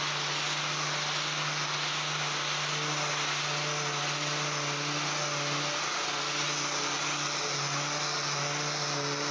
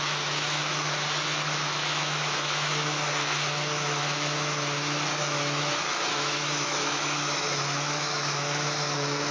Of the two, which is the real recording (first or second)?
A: first